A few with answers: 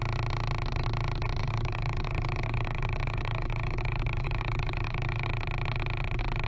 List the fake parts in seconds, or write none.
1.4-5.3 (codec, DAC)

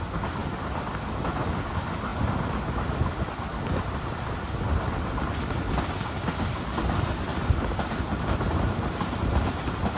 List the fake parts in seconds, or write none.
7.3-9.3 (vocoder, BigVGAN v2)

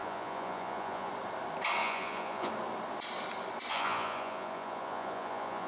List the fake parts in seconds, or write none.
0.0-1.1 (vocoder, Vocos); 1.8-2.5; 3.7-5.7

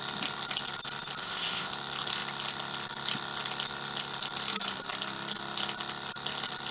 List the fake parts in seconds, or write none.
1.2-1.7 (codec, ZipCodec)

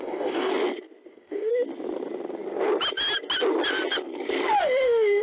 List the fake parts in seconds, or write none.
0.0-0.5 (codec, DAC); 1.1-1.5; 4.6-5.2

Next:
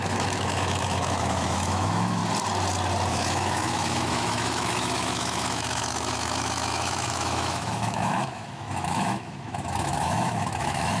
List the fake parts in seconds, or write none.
0.0-2.2 (autoencoder, DAC-VAE); 3.1-11.0

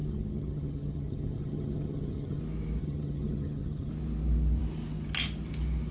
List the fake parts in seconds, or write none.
0.0-2.4 (vocoder, HiFi-GAN); 2.8-3.9

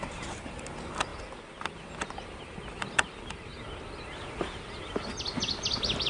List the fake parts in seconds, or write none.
none